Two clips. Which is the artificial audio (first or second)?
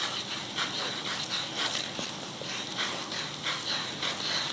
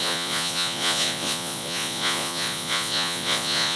second